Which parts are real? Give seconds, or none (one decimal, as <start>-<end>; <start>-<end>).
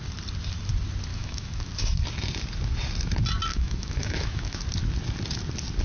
0.0-1.1; 1.7-3.5; 4.6-5.8